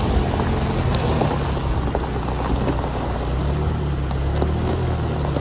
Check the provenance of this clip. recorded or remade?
recorded